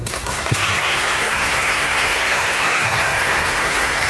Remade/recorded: remade